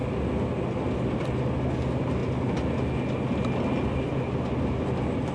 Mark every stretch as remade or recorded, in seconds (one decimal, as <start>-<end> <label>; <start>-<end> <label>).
0.0-5.3 recorded